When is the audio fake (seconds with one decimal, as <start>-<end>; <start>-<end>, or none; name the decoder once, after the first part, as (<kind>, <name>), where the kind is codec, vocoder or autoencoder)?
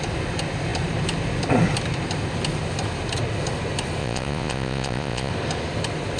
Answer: 4.0-5.3 (vocoder, Vocos)